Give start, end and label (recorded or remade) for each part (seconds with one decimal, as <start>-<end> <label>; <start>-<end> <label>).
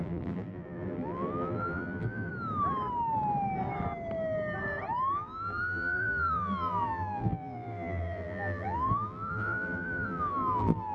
0.0-2.3 remade; 2.3-5.1 recorded; 5.1-10.9 remade